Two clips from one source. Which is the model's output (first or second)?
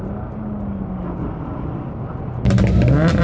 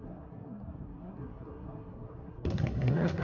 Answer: second